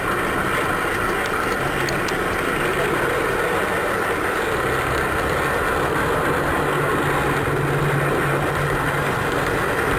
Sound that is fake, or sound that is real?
real